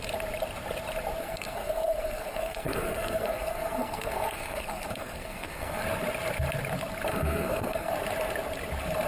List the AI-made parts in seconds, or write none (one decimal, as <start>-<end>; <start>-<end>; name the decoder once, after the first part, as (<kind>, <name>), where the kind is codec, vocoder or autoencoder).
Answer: 1.2-5.8 (codec, SNAC); 7.1-7.9